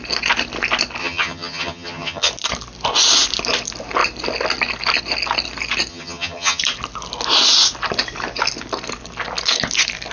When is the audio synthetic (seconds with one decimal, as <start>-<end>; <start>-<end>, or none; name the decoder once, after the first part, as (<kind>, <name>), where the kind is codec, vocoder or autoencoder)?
1.0-2.3 (vocoder, HiFi-GAN); 5.9-6.6